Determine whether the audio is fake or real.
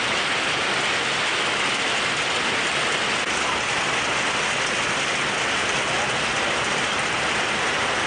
real